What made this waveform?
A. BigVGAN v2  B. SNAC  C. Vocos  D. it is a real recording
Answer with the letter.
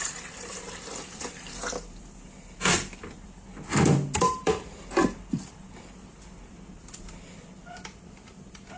A